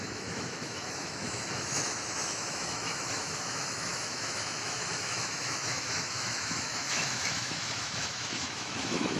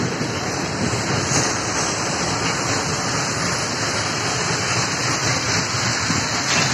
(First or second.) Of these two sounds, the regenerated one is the first